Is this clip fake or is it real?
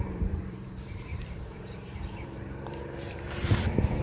fake